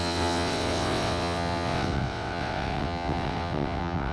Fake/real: fake